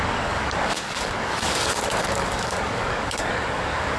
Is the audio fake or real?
fake